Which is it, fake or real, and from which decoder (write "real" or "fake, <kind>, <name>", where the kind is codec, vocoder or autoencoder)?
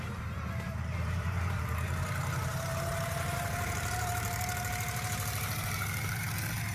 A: fake, vocoder, BigVGAN v2